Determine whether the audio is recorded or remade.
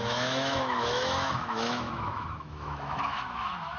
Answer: remade